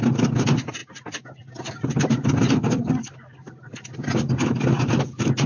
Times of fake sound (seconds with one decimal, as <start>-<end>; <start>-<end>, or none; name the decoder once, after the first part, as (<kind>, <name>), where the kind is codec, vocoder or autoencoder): none